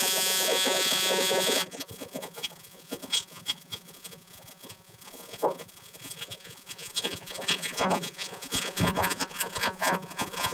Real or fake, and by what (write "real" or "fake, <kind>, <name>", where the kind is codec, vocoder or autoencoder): fake, vocoder, Vocos